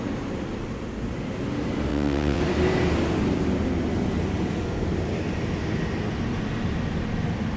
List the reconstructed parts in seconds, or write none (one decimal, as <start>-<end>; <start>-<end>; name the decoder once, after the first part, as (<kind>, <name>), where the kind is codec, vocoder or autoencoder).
1.9-2.4 (vocoder, WaveNeXt)